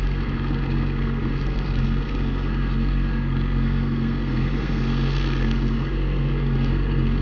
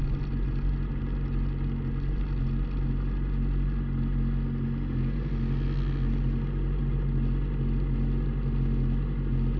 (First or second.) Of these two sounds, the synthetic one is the first